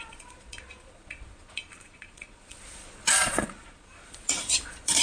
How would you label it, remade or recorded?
remade